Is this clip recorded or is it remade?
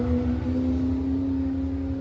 recorded